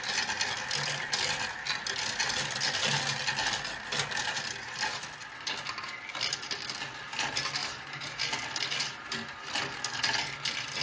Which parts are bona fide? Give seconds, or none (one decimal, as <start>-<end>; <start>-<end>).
0.0-7.6; 8.2-10.8